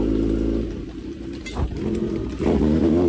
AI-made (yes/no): no